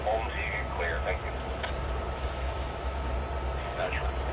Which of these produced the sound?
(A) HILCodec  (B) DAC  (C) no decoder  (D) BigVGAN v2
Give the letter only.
C